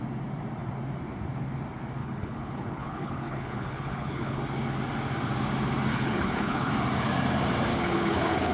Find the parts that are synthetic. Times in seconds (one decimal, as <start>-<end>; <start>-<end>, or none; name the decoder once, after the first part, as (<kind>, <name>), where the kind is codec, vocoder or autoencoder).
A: 2.0-4.4 (codec, HILCodec); 5.9-6.7; 7.7-8.5